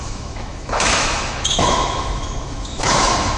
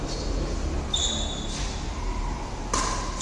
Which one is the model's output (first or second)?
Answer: first